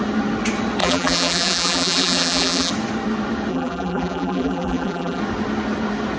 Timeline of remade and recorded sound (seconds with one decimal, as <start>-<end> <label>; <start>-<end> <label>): 0.0-0.8 recorded; 0.8-2.7 remade; 2.7-3.5 recorded; 3.5-5.2 remade; 5.2-6.2 recorded